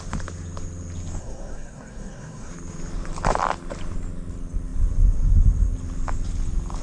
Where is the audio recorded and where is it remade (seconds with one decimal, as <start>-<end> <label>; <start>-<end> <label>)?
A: 0.0-1.2 recorded; 1.2-2.5 remade; 2.5-6.8 recorded